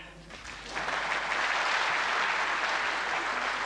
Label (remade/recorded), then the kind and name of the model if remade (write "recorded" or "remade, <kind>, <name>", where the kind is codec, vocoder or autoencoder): recorded